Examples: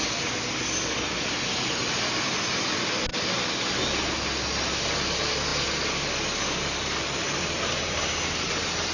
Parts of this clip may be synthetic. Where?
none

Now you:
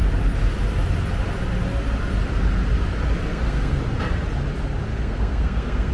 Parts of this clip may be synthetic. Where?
3.3-3.8 (codec, SNAC); 4.9-5.9

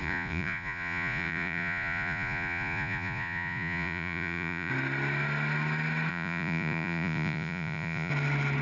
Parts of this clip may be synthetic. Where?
0.0-4.7 (vocoder, Vocos); 6.1-8.1